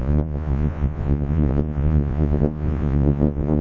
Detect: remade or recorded remade